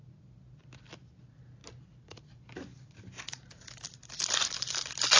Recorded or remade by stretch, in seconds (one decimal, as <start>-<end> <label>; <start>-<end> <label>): 0.0-5.2 recorded